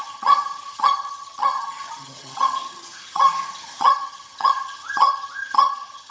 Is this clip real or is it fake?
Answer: fake